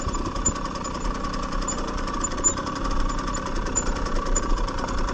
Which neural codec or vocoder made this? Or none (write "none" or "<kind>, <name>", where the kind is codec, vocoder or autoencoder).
vocoder, BigVGAN v2